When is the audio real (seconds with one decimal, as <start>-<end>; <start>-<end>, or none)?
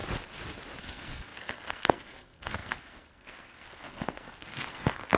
0.0-0.8